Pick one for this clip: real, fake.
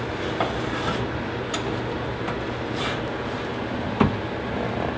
real